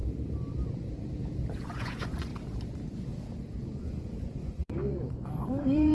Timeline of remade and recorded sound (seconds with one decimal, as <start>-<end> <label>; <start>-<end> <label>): 0.0-1.7 recorded; 1.7-2.3 remade; 2.3-3.8 recorded; 3.8-5.9 remade